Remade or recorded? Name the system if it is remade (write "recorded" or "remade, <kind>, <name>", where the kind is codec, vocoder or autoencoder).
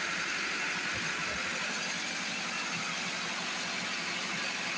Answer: recorded